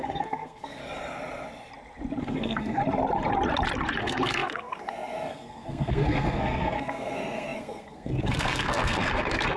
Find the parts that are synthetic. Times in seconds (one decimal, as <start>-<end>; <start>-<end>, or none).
0.0-0.8; 2.2-2.8; 4.0-9.6